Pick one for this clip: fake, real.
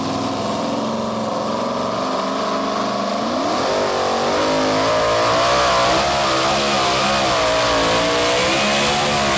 real